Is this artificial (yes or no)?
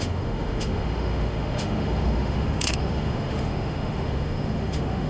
yes